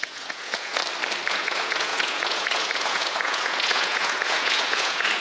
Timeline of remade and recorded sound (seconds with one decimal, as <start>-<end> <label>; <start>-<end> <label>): 0.0-0.8 remade; 0.8-1.3 recorded; 1.3-5.2 remade